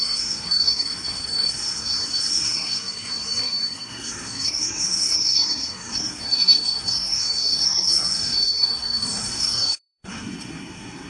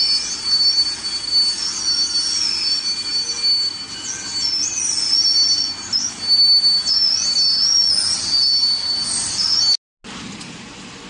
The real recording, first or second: second